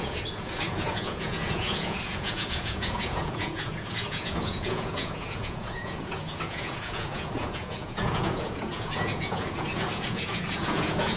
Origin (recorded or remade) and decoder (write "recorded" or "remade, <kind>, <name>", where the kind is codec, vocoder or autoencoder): remade, vocoder, Vocos